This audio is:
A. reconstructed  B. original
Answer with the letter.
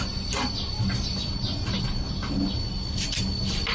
B